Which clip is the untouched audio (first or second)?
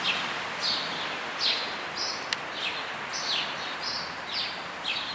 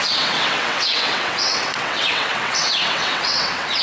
first